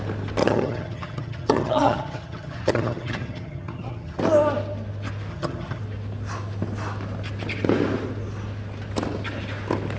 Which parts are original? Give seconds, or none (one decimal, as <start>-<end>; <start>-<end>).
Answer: 0.0-0.4; 4.2-5.3; 5.8-10.0